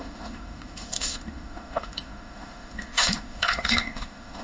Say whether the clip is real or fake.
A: fake